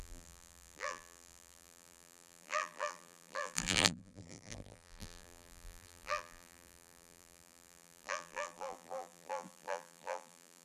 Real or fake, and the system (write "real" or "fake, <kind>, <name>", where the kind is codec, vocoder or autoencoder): fake, vocoder, BigVGAN v2